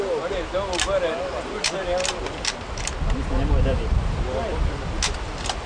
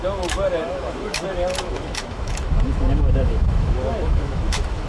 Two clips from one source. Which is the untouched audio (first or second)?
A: first